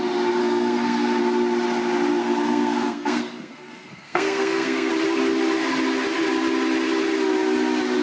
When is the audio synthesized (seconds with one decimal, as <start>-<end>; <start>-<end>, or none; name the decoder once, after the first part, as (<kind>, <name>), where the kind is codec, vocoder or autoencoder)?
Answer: 0.4-1.2 (codec, SNAC); 2.2-4.9